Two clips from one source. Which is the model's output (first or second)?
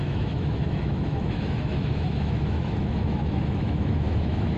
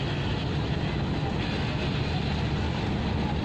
first